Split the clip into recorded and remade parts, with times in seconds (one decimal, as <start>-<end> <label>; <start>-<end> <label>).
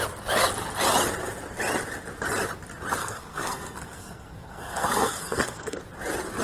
0.0-3.0 recorded; 3.0-5.8 remade; 5.8-6.4 recorded